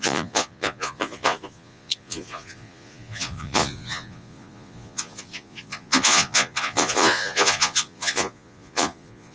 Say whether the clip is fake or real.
fake